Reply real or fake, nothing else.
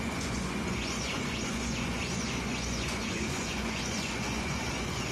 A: fake